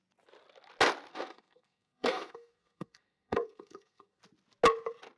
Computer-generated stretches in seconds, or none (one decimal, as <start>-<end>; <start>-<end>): 1.1-4.2